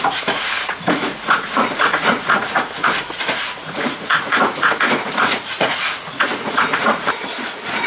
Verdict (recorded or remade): remade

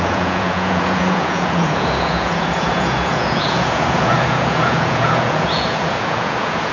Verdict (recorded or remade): remade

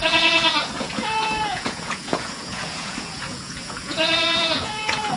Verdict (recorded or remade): remade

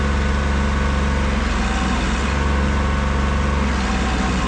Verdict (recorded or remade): recorded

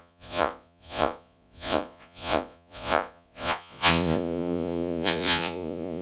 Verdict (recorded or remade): remade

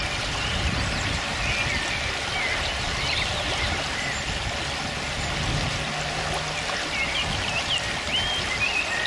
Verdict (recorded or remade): recorded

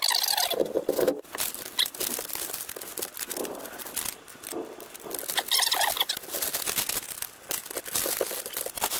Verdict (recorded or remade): recorded